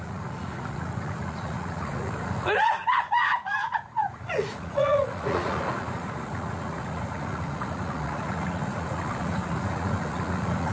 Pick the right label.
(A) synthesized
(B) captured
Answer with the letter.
A